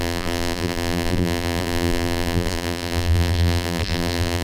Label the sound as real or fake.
fake